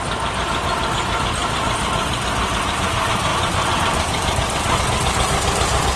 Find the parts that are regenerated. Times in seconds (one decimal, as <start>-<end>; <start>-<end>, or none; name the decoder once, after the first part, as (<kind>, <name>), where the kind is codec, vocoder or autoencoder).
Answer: 1.4-2.5 (vocoder, BigVGAN v2); 3.3-4.8